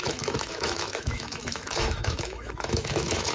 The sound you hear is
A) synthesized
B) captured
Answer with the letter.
A